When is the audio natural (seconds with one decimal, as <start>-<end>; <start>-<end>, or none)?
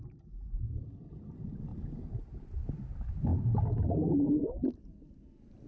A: 0.0-5.7